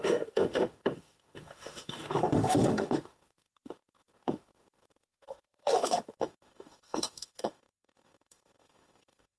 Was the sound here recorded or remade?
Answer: remade